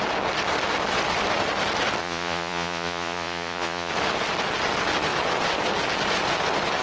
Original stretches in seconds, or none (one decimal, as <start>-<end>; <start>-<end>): 0.0-2.0; 3.9-6.8